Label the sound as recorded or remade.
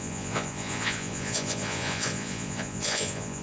remade